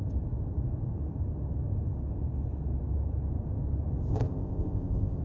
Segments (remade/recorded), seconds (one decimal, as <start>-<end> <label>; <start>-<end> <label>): 0.0-4.1 recorded; 4.1-5.2 remade